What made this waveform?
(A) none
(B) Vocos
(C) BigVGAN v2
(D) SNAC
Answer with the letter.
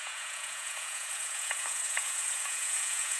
B